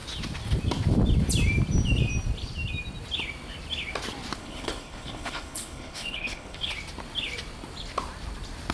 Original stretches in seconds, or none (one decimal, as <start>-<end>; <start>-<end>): 0.0-4.4; 6.7-8.7